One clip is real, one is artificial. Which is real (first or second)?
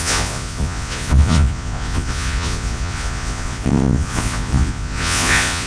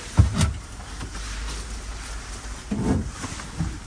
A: second